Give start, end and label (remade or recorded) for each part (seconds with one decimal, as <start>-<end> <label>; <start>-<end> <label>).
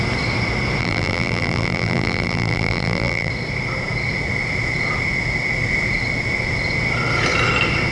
0.0-0.8 recorded; 0.8-3.3 remade; 3.3-7.9 recorded